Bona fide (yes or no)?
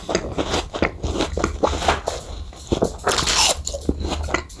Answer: yes